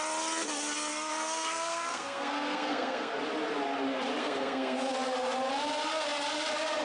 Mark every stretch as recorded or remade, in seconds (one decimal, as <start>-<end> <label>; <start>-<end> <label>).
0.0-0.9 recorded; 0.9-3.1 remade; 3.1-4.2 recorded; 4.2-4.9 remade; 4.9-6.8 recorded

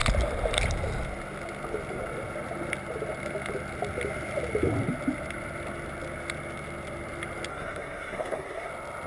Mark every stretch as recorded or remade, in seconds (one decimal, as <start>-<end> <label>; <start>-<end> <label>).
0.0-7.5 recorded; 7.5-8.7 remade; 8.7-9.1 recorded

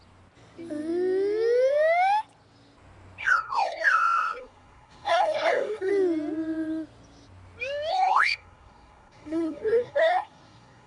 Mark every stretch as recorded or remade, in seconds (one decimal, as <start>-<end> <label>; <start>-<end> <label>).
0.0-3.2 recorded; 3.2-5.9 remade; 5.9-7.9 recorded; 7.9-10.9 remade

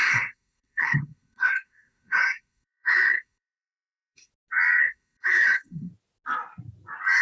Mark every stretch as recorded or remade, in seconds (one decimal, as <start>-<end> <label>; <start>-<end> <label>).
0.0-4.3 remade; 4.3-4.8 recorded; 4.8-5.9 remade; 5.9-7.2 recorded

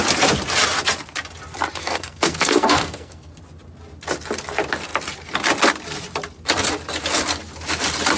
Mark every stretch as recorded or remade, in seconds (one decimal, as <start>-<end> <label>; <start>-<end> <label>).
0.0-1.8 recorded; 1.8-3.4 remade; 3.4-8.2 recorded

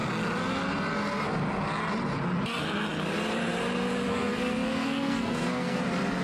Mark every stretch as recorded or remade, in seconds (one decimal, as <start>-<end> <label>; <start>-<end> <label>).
0.0-4.1 recorded; 4.1-5.8 remade; 5.8-6.2 recorded

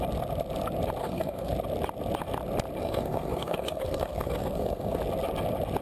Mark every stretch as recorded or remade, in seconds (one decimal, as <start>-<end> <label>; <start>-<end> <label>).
0.0-1.0 recorded; 1.0-1.5 remade; 1.5-2.8 recorded; 2.8-5.0 remade; 5.0-5.8 recorded